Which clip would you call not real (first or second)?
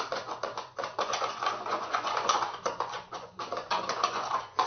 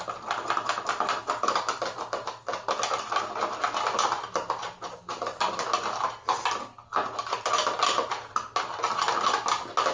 first